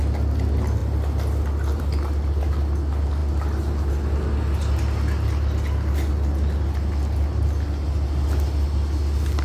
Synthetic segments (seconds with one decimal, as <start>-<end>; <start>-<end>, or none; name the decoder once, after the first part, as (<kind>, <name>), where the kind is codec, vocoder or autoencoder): none